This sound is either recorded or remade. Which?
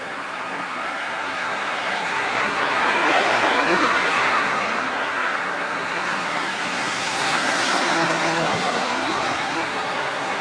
remade